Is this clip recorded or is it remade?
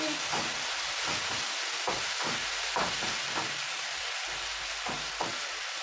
recorded